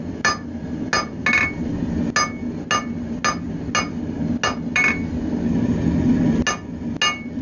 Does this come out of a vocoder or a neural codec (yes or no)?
no